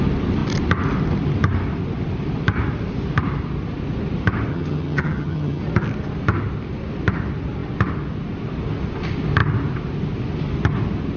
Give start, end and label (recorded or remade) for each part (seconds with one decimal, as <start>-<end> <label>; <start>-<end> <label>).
0.0-4.5 recorded; 4.5-5.6 remade; 5.6-11.2 recorded

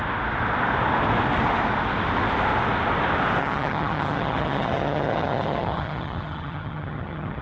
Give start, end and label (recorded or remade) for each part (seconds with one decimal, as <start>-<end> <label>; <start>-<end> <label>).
0.0-3.4 recorded; 3.4-7.4 remade